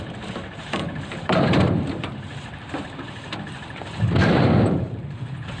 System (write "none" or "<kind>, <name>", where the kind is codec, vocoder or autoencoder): vocoder, BigVGAN v2